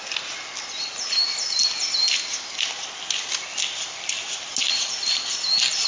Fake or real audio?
real